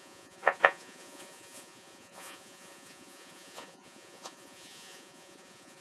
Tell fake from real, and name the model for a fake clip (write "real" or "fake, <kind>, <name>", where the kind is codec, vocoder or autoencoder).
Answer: fake, vocoder, Vocos